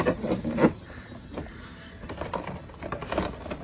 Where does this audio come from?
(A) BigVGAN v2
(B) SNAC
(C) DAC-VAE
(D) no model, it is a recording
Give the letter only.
D